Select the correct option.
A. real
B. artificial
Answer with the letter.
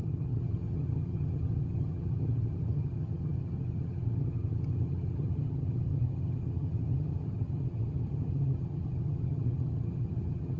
B